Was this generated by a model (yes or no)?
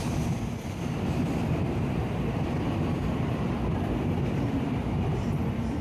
yes